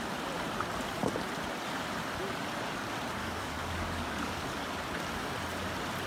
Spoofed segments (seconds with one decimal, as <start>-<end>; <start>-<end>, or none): 3.2-4.8